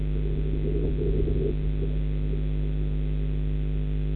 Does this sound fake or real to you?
real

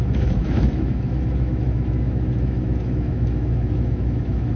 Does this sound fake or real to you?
fake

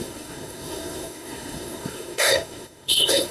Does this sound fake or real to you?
fake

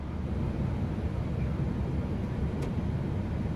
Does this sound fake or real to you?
real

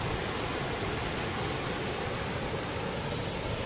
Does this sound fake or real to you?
real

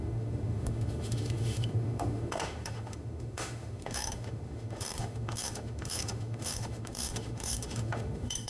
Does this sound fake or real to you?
fake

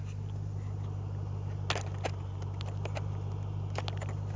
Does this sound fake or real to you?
real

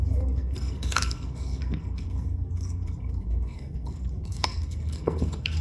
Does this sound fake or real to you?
fake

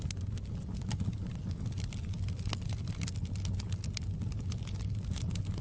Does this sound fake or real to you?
real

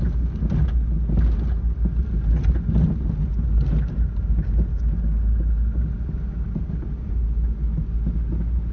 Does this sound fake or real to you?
real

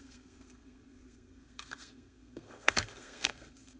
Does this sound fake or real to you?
fake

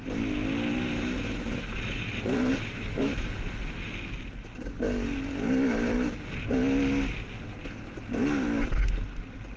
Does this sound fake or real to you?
real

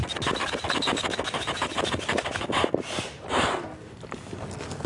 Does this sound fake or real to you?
real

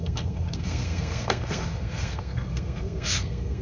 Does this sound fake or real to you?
fake